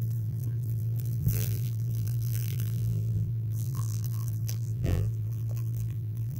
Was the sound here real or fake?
fake